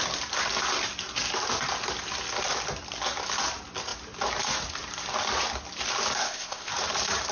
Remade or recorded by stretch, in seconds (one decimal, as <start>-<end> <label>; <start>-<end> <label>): 0.0-6.2 recorded; 6.2-6.7 remade; 6.7-7.3 recorded

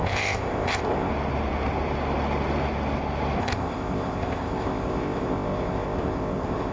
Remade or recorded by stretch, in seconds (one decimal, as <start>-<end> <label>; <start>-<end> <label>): 0.0-1.1 remade; 1.1-3.4 recorded; 3.4-6.7 remade

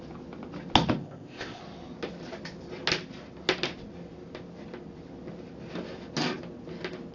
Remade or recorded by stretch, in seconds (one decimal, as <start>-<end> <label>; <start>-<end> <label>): 0.0-1.0 recorded; 1.0-1.6 remade; 1.6-7.1 recorded